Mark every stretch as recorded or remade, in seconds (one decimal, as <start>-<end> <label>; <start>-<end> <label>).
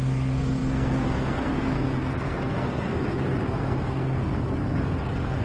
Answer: 0.0-5.4 remade